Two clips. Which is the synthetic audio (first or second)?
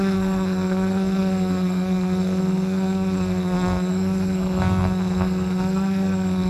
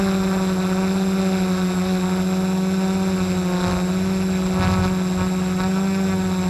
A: first